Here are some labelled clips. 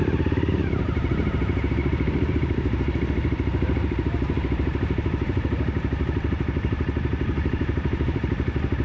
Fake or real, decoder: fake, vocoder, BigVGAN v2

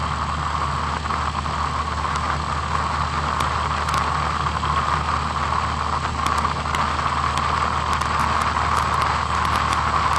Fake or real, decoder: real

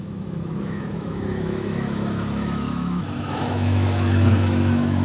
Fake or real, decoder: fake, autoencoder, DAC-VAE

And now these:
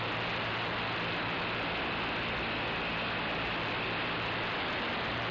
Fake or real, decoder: real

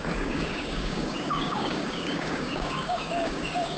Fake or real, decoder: fake, codec, DAC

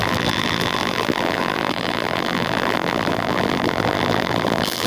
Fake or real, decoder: fake, vocoder, BigVGAN v2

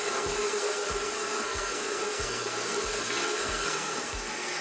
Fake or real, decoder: fake, codec, SNAC